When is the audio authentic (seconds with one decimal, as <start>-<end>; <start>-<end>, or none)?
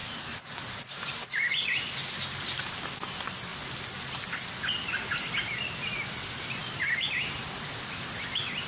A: 0.0-8.7